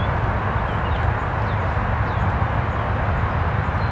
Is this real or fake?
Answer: real